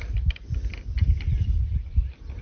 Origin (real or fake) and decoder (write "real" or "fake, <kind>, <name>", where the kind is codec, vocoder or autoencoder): real